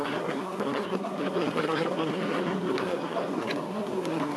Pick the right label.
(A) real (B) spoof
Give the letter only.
B